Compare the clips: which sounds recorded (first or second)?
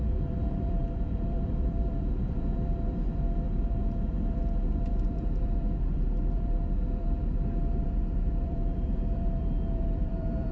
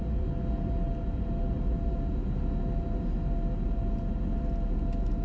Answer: second